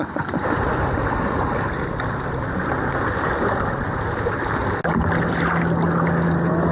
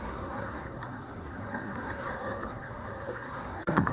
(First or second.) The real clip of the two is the first